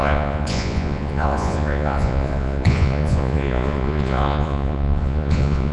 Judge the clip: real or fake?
fake